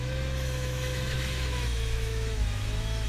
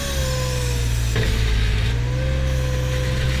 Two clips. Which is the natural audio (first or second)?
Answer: second